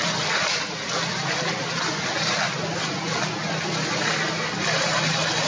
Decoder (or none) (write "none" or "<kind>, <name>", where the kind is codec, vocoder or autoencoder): none